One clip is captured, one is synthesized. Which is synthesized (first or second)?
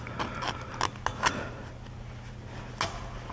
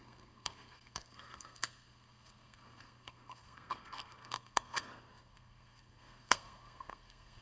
second